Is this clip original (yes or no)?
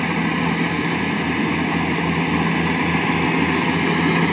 yes